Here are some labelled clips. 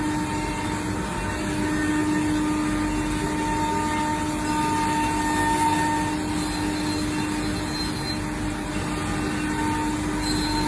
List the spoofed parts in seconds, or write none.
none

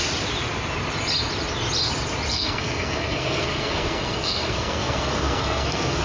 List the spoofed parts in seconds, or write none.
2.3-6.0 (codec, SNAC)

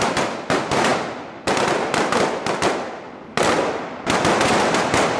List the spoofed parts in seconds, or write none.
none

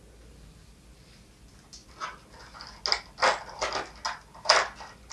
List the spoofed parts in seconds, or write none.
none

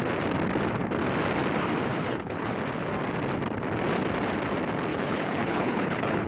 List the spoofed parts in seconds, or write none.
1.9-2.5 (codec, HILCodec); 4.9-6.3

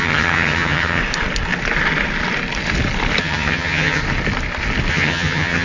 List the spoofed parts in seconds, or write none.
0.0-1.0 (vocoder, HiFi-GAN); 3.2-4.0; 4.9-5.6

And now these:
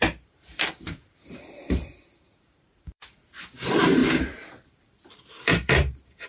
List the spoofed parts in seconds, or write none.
0.0-6.3 (vocoder, BigVGAN v2)